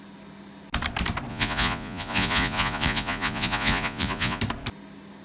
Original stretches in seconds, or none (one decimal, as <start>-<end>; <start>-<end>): 0.0-1.3; 4.4-5.2